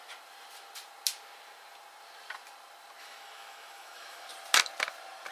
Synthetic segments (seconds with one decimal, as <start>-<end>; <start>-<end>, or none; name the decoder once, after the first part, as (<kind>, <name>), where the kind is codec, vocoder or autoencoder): 3.0-4.3 (autoencoder, DAC-VAE)